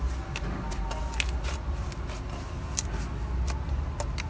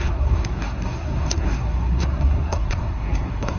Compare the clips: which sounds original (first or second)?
first